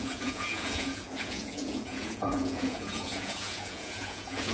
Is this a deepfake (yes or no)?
yes